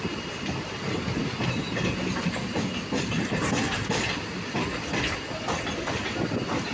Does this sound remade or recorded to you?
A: recorded